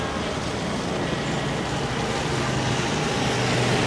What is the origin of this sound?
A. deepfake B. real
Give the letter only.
B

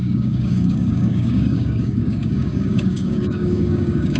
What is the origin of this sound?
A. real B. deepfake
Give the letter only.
B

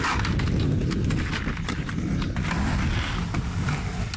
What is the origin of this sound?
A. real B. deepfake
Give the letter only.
A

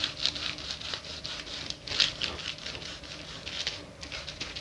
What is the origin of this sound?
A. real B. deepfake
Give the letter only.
A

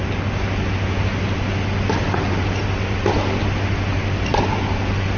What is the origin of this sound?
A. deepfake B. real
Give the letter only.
B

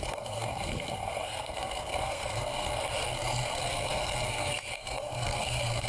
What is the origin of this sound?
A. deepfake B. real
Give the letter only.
A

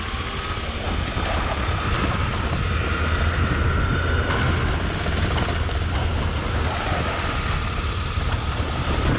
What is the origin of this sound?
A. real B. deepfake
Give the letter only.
A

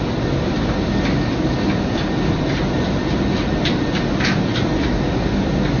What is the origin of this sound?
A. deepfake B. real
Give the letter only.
B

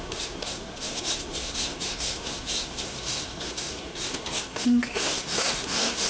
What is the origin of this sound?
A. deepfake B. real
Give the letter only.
A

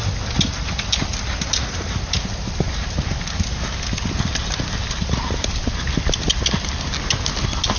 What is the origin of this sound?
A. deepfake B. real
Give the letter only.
B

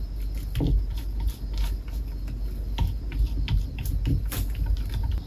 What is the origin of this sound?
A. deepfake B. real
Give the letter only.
B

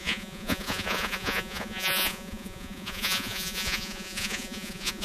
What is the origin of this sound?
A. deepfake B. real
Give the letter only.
A